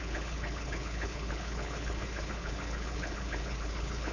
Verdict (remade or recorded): remade